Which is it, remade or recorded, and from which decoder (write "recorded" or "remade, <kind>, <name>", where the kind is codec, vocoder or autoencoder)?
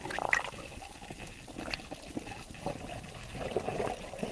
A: recorded